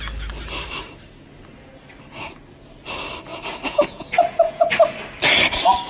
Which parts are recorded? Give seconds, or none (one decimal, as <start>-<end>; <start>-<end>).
0.0-3.3; 4.7-5.9